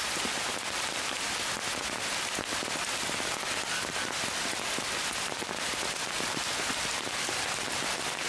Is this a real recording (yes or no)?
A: yes